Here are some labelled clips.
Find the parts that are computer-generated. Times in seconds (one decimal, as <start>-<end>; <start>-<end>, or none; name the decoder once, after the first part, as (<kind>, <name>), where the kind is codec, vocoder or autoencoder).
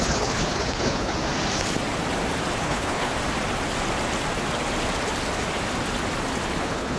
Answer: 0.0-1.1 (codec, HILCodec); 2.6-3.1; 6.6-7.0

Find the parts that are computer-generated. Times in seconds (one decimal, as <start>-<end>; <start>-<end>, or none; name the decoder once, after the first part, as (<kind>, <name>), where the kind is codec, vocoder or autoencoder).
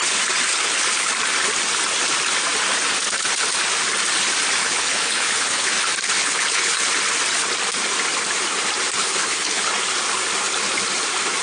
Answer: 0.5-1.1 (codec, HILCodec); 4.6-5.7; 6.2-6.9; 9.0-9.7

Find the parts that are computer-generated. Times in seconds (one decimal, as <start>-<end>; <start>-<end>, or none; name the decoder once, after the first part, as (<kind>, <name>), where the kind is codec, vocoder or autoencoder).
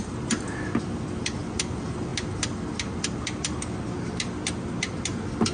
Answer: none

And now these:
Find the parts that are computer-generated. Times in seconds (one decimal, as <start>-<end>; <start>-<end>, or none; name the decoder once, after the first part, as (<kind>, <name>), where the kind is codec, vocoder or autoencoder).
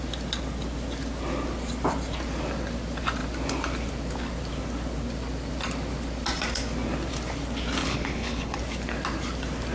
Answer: 7.8-8.6 (codec, HILCodec)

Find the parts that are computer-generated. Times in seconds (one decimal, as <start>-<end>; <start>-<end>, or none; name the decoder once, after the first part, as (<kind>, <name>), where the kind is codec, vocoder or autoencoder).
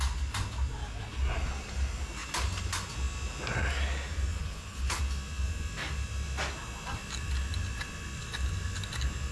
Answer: 4.4-5.0 (codec, HILCodec)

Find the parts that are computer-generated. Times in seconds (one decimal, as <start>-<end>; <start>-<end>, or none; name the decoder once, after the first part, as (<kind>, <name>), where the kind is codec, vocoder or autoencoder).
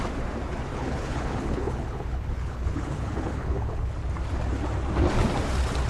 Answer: 0.7-3.9 (codec, HILCodec)